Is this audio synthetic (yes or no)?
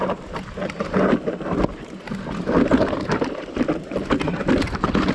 no